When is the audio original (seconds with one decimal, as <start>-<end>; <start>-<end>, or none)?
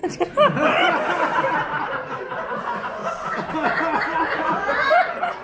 0.0-2.6; 3.0-4.0